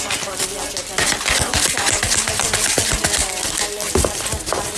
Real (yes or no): yes